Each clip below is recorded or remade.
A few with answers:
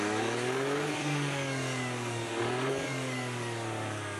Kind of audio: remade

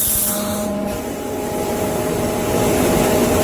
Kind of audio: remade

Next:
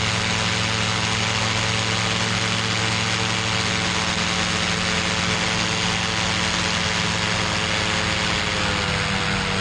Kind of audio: recorded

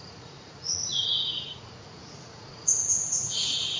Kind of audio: remade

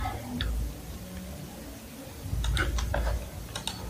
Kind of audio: recorded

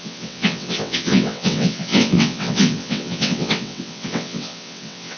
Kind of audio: remade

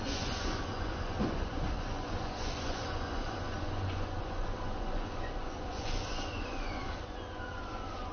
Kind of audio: remade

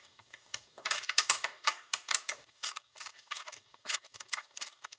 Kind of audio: remade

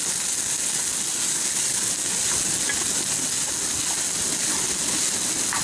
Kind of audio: recorded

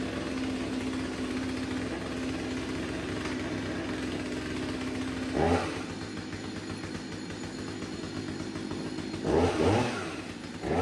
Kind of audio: recorded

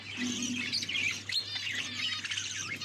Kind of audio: recorded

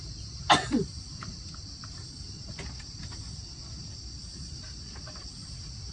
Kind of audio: recorded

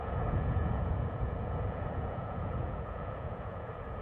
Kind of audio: remade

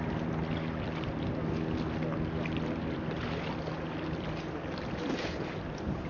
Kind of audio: recorded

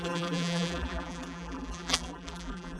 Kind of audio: remade